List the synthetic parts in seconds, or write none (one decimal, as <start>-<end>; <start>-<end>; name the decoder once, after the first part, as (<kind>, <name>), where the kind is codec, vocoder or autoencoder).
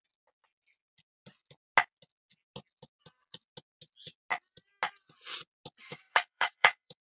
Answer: 5.9-7.0 (codec, DAC)